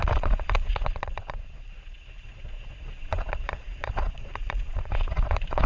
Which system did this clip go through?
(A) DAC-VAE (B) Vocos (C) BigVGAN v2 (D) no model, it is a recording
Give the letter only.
B